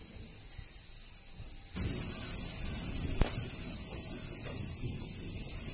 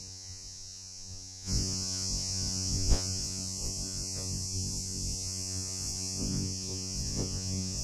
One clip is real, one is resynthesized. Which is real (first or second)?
first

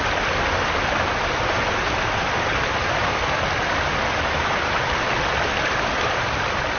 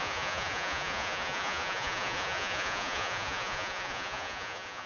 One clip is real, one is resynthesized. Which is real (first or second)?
first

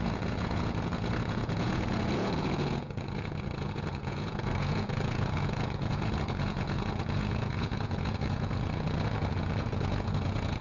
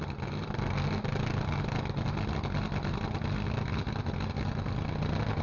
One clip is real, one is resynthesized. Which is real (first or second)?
second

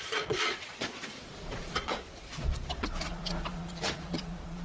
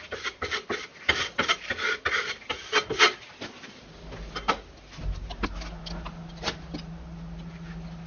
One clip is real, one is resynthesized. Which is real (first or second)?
second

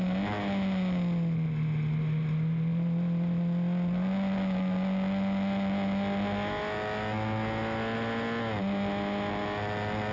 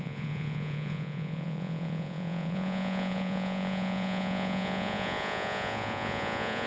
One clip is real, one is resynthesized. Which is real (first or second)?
first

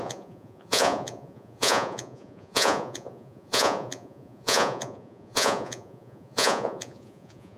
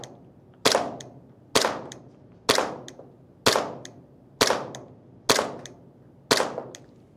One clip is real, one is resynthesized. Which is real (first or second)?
second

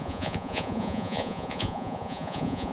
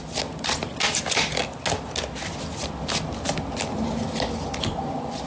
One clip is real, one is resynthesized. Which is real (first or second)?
second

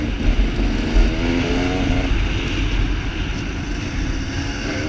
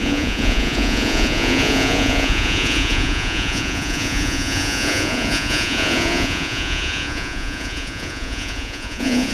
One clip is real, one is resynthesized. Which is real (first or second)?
first